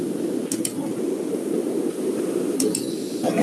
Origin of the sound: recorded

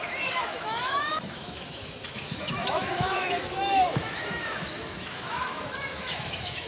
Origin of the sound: remade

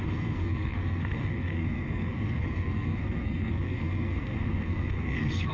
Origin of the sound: remade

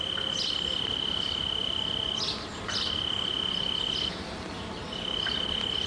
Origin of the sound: recorded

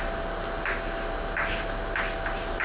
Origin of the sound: recorded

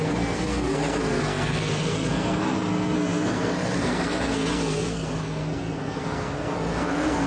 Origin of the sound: remade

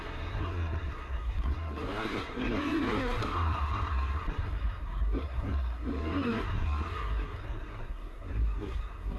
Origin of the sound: remade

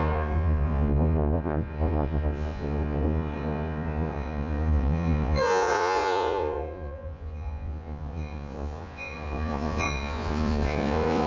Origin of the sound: remade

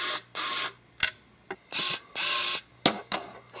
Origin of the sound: recorded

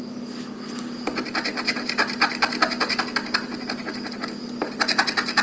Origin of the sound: recorded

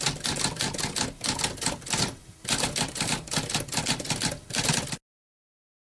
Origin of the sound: recorded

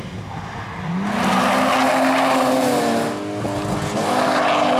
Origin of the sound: recorded